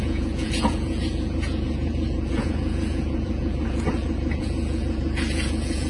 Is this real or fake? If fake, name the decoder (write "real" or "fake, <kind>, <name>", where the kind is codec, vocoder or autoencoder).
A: fake, vocoder, Vocos